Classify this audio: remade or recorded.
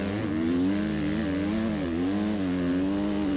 recorded